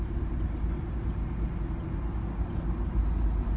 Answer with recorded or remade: recorded